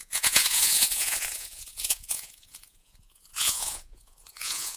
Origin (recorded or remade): remade